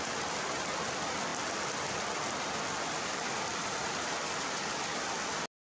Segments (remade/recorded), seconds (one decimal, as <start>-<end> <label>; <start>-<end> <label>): 0.0-1.3 recorded; 1.3-4.7 remade; 4.7-5.7 recorded